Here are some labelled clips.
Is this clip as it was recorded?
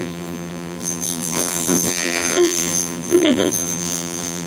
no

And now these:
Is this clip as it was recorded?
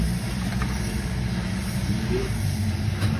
no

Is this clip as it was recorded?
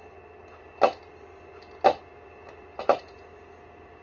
yes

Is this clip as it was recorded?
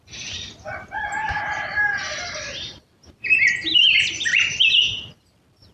no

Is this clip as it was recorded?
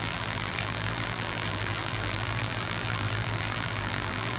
no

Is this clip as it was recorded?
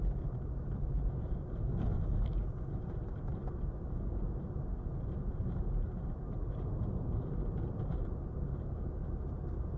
no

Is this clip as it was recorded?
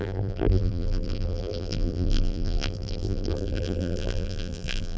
no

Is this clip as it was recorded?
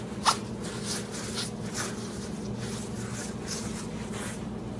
yes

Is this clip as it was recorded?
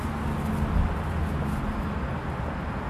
yes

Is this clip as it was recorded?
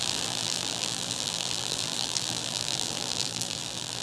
no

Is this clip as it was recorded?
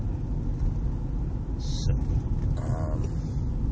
yes